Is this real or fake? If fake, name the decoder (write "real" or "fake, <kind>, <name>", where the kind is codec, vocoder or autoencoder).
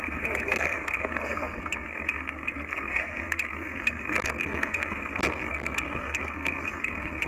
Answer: fake, codec, SNAC